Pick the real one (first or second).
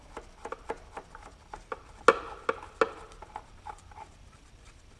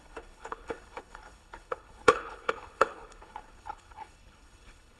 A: first